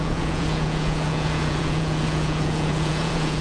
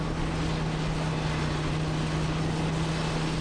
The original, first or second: second